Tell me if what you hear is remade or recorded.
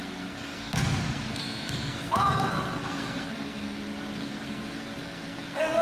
remade